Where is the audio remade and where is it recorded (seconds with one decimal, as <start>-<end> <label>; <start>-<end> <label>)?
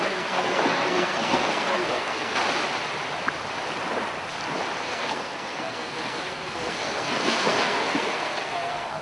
0.0-2.4 remade; 2.4-4.8 recorded; 4.8-9.0 remade